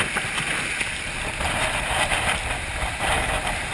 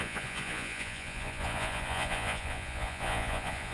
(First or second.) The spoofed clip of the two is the second